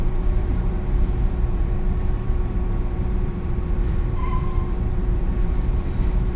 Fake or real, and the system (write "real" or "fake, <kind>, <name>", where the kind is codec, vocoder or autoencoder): fake, vocoder, BigVGAN v2